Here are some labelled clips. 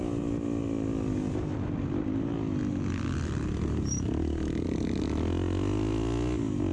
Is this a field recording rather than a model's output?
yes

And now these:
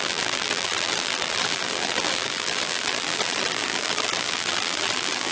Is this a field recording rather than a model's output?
no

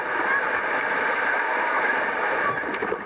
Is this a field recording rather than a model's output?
yes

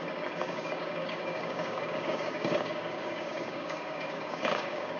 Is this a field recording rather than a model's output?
no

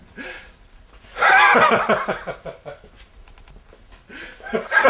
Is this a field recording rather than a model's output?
yes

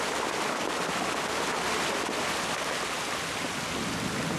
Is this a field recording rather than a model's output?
yes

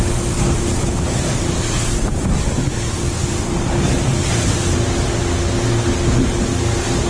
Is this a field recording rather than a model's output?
yes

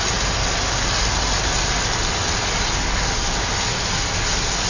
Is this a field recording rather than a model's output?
yes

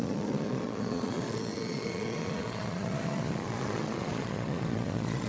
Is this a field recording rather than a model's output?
no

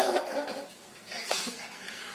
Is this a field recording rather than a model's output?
no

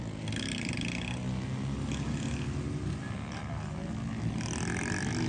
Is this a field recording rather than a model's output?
yes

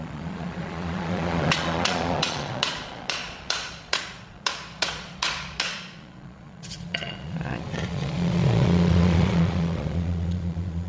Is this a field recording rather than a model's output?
no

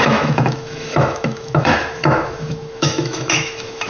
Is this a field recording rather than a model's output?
no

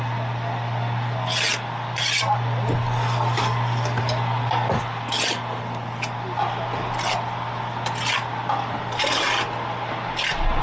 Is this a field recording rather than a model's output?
yes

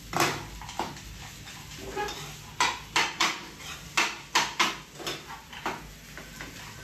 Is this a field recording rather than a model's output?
yes